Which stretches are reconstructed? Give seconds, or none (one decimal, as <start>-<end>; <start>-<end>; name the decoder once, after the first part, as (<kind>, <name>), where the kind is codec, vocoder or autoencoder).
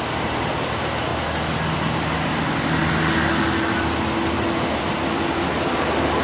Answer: none